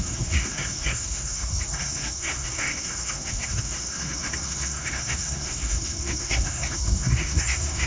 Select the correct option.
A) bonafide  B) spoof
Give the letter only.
B